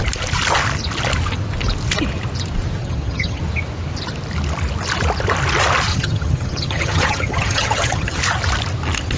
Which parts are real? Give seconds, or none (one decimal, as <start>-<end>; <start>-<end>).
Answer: 0.0-2.8; 3.4-5.9; 8.2-9.2

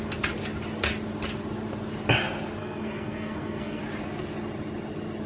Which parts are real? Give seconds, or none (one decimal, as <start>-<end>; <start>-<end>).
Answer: 0.0-2.6; 3.8-5.3

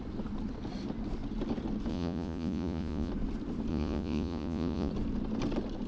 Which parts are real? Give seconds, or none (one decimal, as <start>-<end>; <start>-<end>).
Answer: 0.0-1.9; 3.1-3.7; 4.9-5.9

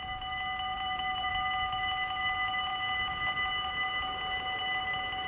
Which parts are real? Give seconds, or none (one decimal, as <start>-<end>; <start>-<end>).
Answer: 0.0-0.7; 1.3-5.3

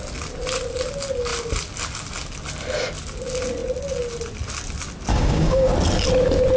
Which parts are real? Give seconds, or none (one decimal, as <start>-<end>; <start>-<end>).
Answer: 0.0-5.1; 5.7-6.6

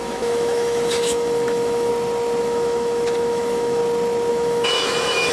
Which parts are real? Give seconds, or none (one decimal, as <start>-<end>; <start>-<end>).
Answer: 1.9-2.4; 3.8-4.3